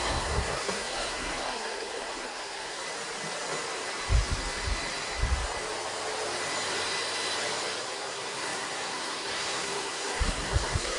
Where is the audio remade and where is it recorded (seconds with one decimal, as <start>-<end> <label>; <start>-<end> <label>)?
0.0-2.8 remade; 2.8-7.8 recorded; 7.8-11.0 remade